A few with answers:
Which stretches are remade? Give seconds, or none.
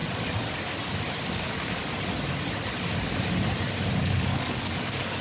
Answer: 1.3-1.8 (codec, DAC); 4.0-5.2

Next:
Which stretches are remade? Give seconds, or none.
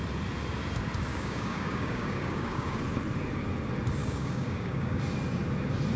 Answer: 1.1-2.8 (codec, DAC); 4.0-5.0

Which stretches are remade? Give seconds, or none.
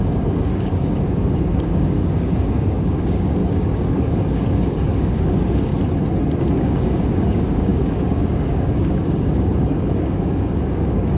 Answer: 0.0-5.7 (codec, DAC); 6.4-11.2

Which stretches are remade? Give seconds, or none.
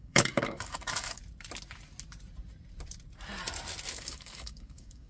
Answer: 0.0-1.2 (codec, DAC); 3.9-5.1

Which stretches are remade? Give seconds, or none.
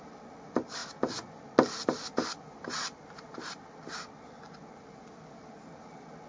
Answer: none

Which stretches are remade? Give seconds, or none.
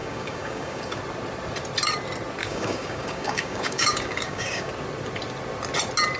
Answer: 0.0-1.0 (codec, DAC); 2.4-4.7